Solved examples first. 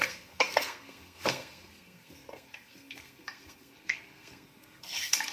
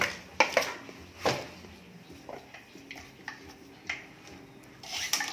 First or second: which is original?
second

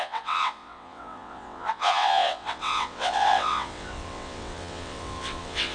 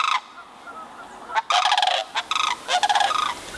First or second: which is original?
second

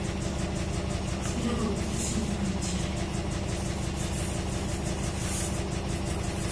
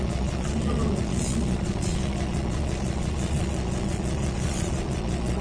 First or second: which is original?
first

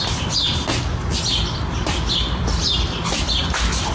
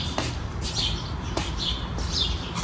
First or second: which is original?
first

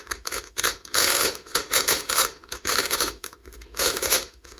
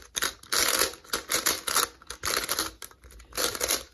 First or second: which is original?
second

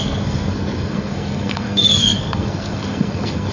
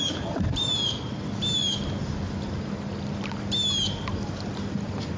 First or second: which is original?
second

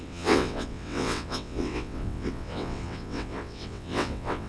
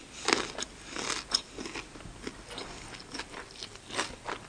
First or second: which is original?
second